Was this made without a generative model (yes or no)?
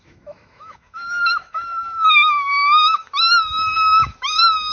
no